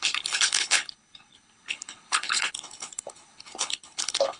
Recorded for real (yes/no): no